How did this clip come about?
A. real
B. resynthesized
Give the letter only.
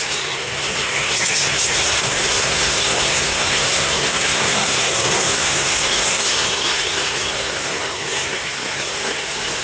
B